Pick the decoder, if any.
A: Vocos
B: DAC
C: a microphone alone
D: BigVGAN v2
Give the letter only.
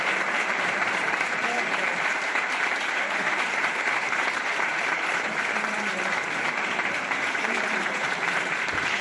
D